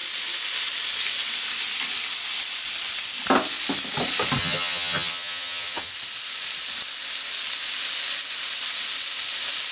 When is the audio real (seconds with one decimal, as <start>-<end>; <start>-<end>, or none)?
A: 0.0-4.4; 5.9-9.7